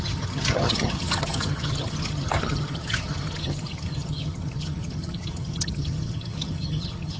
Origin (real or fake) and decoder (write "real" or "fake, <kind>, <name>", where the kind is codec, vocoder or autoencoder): fake, vocoder, HiFi-GAN